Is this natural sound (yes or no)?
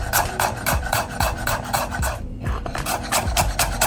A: no